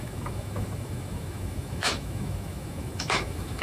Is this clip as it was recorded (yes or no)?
no